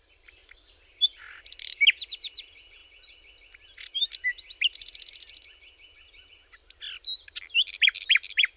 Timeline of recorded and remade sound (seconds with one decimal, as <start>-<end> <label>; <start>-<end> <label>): 0.0-0.4 remade; 0.4-2.1 recorded; 2.1-2.8 remade; 2.8-6.3 recorded; 6.3-8.6 remade